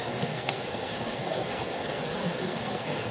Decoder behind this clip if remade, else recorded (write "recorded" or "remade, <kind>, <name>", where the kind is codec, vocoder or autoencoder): remade, codec, SNAC